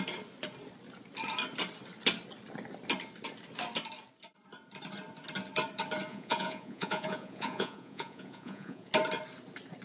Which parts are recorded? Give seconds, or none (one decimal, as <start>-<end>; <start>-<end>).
0.0-6.1; 8.9-9.8